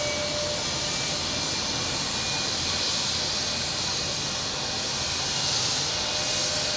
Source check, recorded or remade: recorded